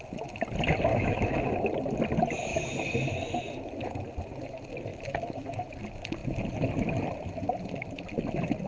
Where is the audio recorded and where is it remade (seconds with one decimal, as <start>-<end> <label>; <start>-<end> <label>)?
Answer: 0.0-0.9 recorded; 0.9-1.5 remade; 1.5-4.9 recorded; 4.9-5.7 remade; 5.7-8.7 recorded